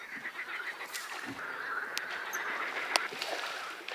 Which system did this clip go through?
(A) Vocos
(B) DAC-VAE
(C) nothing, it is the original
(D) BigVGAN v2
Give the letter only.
C